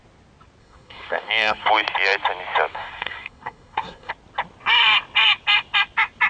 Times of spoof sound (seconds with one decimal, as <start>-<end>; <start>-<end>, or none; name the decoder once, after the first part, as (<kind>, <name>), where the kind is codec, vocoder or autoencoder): 0.6-1.7 (codec, SNAC); 2.7-4.1